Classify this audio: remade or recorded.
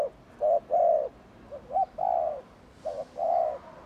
recorded